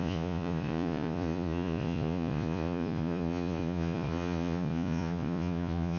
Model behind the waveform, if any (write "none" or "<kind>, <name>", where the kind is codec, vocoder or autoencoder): vocoder, Vocos